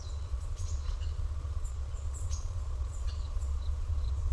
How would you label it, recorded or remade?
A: remade